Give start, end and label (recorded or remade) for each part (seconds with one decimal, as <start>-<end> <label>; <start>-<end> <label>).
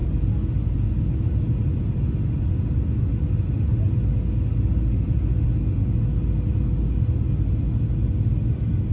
0.0-8.9 recorded